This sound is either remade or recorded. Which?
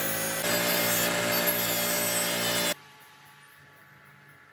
recorded